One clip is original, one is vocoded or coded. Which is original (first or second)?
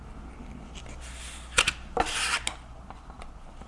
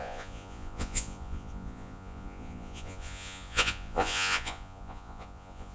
first